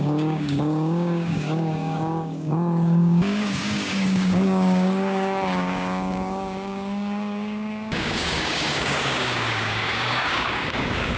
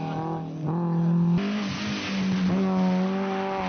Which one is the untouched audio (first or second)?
second